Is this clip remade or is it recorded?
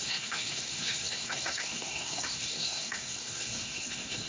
remade